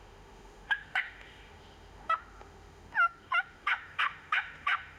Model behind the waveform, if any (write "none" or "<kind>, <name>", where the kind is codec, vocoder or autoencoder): autoencoder, DAC-VAE